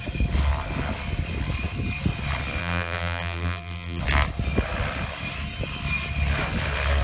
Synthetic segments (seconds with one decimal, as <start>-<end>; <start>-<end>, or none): 2.6-4.0

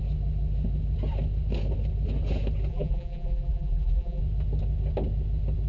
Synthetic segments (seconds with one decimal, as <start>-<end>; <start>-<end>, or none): 2.7-4.2